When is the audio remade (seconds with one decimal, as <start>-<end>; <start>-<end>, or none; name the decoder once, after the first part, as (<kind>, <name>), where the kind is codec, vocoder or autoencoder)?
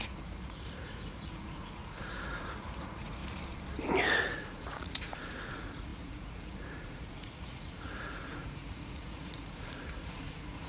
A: 0.0-3.2 (vocoder, Vocos); 4.0-10.7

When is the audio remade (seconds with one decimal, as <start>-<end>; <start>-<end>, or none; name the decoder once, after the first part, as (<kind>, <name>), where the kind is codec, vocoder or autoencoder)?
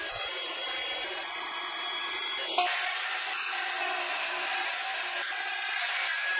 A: 2.0-4.3 (vocoder, BigVGAN v2)